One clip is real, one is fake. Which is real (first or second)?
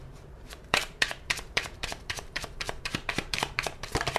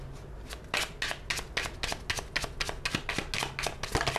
second